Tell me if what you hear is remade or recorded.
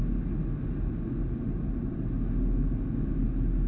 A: recorded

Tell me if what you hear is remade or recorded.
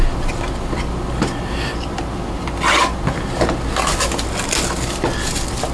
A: recorded